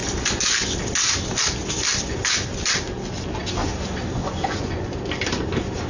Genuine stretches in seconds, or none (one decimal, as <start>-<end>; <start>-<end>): 0.0-4.2; 4.9-5.9